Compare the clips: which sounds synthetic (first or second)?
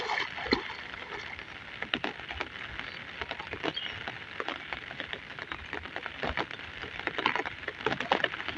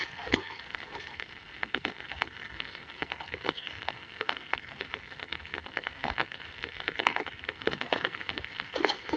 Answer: second